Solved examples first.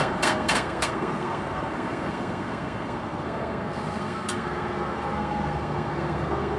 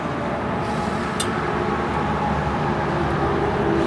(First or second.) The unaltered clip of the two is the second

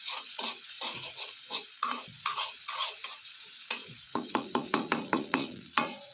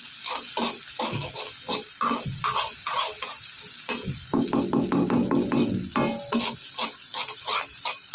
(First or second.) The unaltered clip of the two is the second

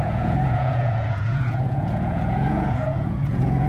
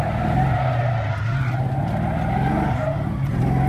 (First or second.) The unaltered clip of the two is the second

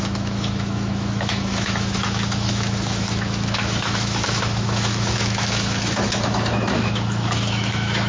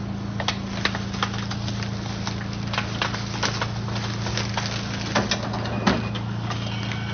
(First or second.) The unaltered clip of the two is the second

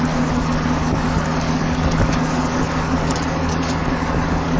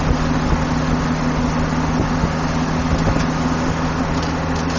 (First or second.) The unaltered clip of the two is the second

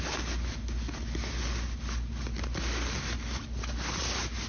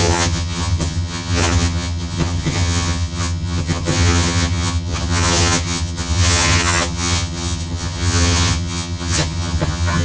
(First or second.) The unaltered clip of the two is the first